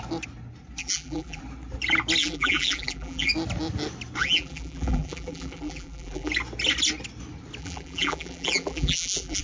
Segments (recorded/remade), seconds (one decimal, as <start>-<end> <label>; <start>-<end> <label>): 0.0-0.8 recorded; 0.8-1.4 remade; 1.4-2.2 recorded; 2.2-3.3 remade; 3.3-4.2 recorded; 4.2-6.3 remade; 6.3-7.6 recorded; 7.6-9.4 remade